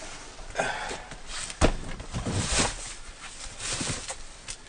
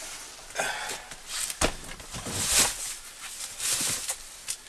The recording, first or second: second